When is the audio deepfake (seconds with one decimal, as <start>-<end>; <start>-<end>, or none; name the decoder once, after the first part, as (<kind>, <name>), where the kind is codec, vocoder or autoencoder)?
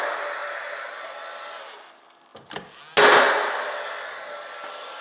none